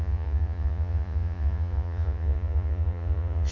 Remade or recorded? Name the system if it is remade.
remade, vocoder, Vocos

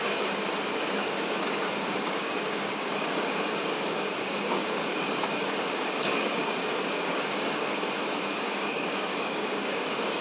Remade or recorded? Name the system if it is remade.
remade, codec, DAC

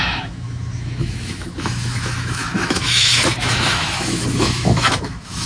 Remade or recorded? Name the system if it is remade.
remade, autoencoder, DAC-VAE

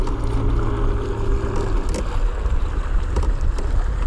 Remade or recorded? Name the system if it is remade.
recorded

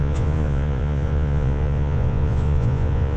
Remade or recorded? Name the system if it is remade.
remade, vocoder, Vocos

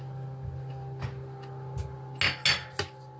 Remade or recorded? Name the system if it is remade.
recorded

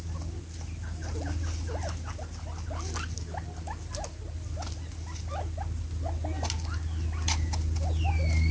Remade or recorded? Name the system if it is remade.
recorded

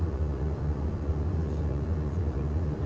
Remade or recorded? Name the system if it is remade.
remade, vocoder, Vocos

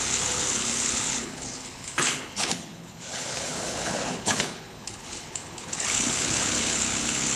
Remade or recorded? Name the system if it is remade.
remade, codec, HILCodec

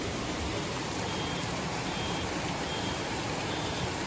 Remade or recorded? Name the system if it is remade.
recorded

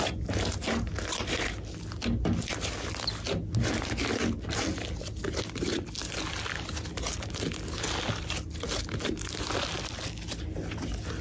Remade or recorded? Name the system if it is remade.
recorded